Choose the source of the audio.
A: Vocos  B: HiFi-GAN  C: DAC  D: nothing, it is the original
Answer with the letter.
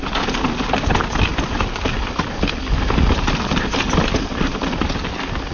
D